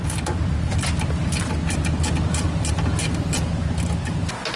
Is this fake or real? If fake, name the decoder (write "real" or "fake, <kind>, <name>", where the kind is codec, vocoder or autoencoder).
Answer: real